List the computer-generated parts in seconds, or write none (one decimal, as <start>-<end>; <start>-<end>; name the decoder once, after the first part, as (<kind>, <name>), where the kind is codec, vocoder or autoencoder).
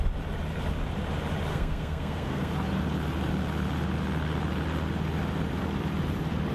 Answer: 1.5-2.5 (codec, SNAC)